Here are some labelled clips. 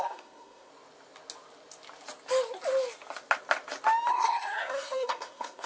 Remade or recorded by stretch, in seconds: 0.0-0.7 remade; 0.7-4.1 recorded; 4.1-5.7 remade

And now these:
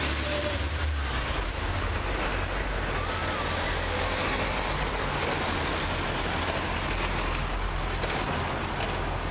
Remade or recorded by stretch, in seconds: 0.0-9.3 recorded

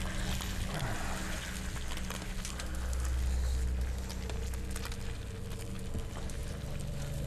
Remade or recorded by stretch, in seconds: 0.0-6.4 recorded; 6.4-7.3 remade